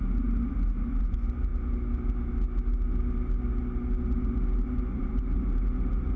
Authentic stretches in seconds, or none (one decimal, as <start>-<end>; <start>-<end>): 0.0-6.2